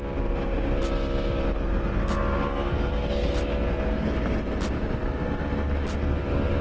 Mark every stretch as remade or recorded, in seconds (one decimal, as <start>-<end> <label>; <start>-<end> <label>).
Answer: 0.0-6.6 recorded